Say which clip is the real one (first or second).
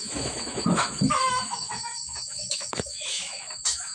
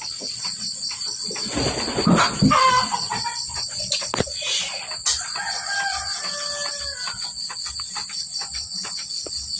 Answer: second